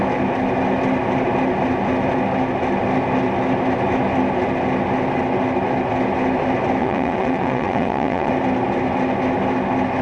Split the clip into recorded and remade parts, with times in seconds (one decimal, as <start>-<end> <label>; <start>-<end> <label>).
0.0-6.8 recorded; 6.8-8.3 remade; 8.3-10.0 recorded